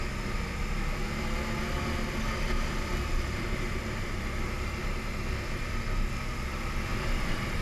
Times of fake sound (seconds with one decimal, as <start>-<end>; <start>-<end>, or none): 6.9-7.6